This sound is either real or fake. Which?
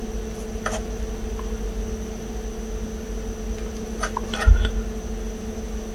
real